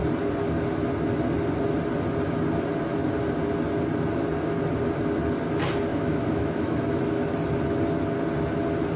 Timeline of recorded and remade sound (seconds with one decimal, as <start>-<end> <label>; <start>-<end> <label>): 0.0-5.9 recorded; 5.9-7.0 remade; 7.0-9.0 recorded